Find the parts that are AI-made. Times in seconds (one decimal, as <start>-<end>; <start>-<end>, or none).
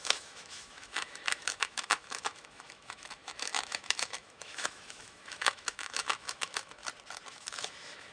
0.0-6.8; 7.3-8.1